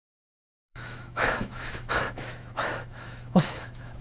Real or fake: fake